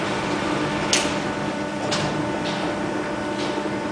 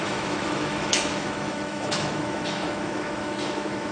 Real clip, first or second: first